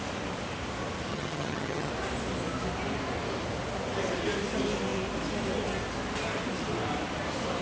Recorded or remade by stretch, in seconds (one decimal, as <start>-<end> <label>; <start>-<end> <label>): 0.0-1.1 recorded; 1.1-1.9 remade; 1.9-7.6 recorded